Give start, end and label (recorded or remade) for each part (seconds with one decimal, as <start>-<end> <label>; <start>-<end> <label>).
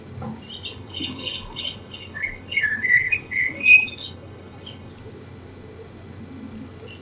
0.0-0.7 recorded; 0.7-4.9 remade; 4.9-7.0 recorded